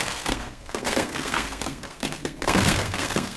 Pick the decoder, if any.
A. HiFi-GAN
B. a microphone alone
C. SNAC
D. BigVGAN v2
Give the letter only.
C